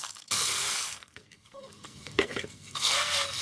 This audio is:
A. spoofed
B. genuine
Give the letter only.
A